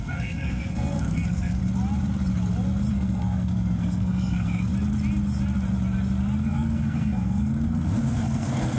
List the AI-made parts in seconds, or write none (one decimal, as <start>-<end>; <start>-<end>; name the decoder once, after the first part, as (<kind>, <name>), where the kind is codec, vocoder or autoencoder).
0.0-1.6 (codec, SNAC); 2.9-4.7; 6.4-8.8